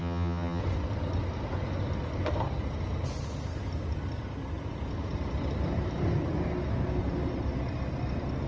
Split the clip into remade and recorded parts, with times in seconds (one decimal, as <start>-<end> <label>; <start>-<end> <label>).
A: 0.0-0.6 remade; 0.6-8.5 recorded